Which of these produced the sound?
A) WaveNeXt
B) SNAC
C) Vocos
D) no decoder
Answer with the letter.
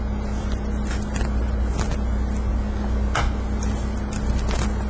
D